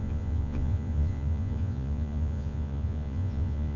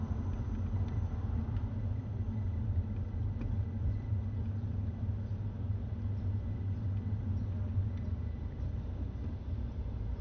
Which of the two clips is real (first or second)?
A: second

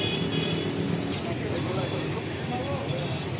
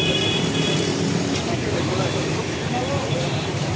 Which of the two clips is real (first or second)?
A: first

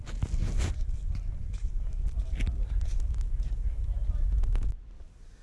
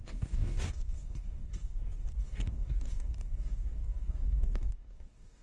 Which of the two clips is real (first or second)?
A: first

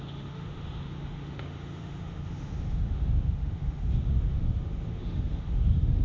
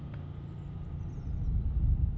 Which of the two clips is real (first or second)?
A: second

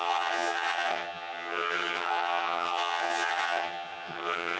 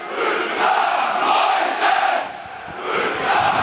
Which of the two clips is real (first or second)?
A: second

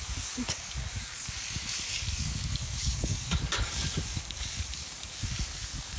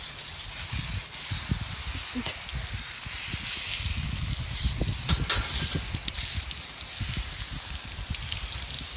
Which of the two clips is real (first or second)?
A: second